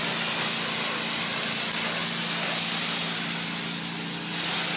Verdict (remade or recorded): recorded